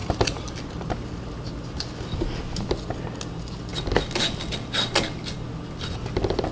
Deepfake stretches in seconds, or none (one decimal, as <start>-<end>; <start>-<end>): 0.0-1.8